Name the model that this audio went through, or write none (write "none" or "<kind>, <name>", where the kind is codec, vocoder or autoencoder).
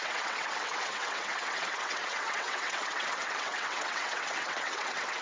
vocoder, WaveNeXt